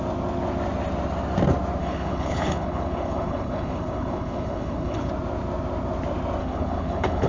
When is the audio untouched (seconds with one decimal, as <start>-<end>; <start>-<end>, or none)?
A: 0.0-1.8; 5.1-6.4